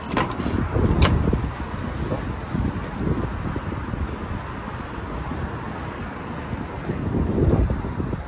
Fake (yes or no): no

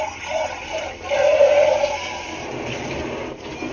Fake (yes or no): no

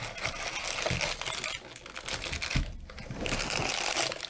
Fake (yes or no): no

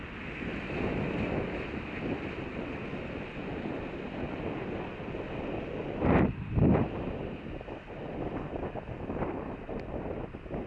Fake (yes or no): no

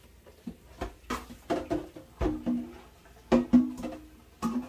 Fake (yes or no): no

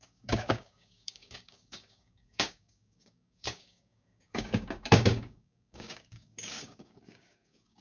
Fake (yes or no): yes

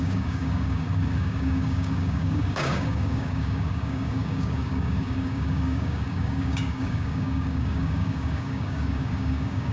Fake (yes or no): yes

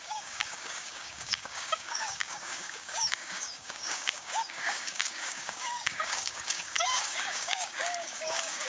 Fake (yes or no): yes